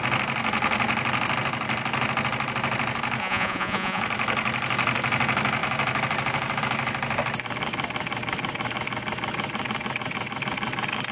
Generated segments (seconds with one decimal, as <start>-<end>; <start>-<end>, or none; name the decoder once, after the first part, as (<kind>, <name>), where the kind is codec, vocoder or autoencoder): 3.2-4.0 (vocoder, Vocos)